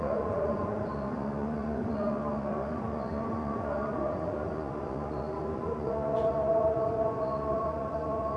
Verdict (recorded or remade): remade